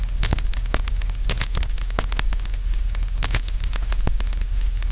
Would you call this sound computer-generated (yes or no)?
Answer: no